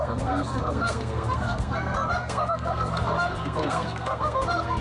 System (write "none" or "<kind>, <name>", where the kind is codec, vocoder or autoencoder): codec, SNAC